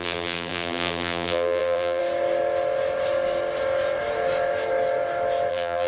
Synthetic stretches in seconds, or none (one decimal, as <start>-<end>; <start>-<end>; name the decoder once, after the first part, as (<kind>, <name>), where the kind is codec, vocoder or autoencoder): 0.0-2.0 (vocoder, BigVGAN v2); 5.5-5.9